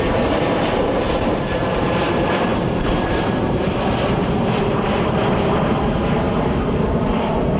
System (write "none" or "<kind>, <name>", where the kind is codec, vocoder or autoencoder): vocoder, BigVGAN v2